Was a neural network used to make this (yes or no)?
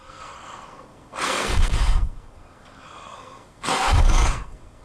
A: yes